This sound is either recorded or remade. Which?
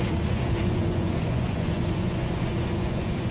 remade